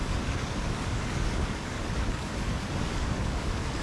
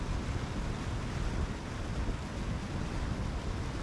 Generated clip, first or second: first